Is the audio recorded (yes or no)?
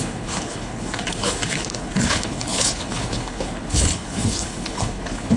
no